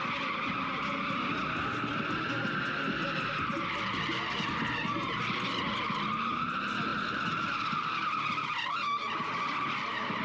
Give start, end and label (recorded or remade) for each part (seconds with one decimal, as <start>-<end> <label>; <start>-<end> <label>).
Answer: 0.0-10.2 recorded

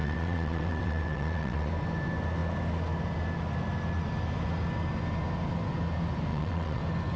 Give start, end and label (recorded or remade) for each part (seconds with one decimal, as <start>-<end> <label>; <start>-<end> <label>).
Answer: 0.0-1.7 remade; 1.7-6.3 recorded; 6.3-6.8 remade; 6.8-7.2 recorded

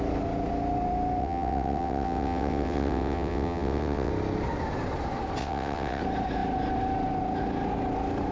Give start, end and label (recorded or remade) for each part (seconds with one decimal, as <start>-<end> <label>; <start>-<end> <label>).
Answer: 0.0-1.2 recorded; 1.2-4.1 remade; 4.1-5.4 recorded; 5.4-6.0 remade; 6.0-8.3 recorded

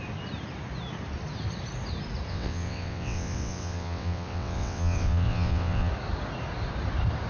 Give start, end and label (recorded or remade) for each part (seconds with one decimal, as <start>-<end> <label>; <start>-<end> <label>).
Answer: 0.0-2.3 recorded; 2.3-5.9 remade; 5.9-7.3 recorded

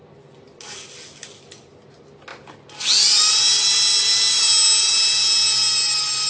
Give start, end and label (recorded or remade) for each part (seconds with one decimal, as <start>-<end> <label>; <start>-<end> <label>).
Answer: 0.0-6.3 recorded

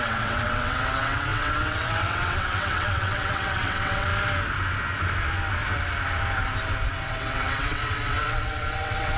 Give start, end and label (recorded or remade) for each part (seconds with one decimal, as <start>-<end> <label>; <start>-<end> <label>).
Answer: 0.0-4.1 remade; 4.1-7.1 recorded; 7.1-9.2 remade